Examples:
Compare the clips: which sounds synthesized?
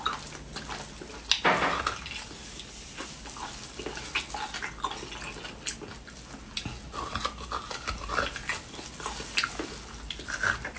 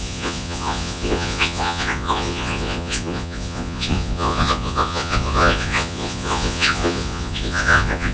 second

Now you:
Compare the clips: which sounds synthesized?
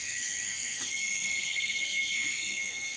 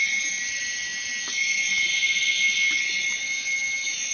first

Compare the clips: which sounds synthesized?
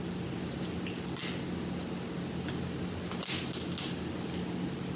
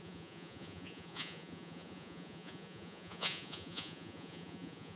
second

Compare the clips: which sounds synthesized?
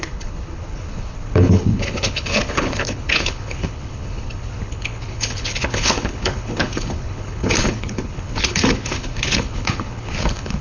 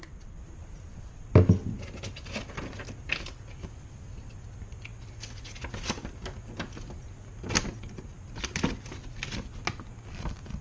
first